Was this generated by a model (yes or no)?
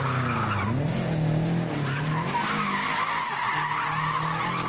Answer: no